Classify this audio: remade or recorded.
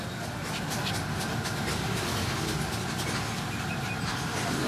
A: recorded